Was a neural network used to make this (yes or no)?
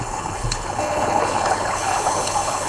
yes